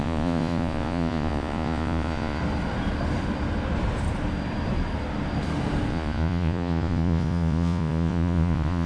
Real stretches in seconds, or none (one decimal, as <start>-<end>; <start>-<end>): 2.4-5.9